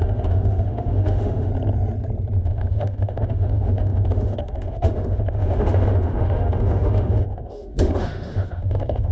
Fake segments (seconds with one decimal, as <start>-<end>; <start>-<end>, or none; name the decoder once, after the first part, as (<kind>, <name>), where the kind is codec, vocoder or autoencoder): 0.0-1.5 (autoencoder, DAC-VAE); 2.4-9.1